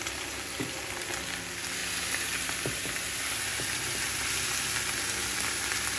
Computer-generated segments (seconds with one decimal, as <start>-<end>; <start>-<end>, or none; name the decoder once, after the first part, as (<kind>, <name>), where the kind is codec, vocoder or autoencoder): none